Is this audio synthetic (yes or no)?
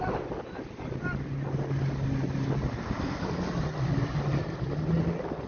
no